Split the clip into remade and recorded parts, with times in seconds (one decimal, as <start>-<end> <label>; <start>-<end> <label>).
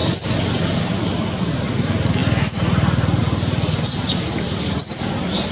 0.0-5.5 recorded